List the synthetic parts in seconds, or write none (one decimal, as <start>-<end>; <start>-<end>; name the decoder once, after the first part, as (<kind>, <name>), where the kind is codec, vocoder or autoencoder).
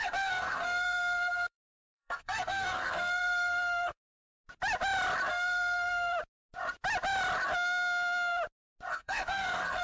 0.0-4.3 (codec, SNAC); 5.3-6.1; 8.9-9.8